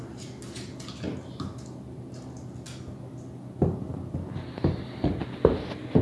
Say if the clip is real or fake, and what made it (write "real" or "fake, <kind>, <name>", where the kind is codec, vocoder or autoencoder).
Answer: real